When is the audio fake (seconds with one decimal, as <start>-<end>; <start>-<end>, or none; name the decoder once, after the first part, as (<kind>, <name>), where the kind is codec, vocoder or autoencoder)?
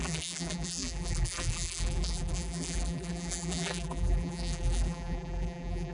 0.0-5.9 (vocoder, BigVGAN v2)